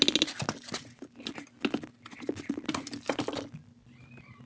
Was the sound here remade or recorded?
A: recorded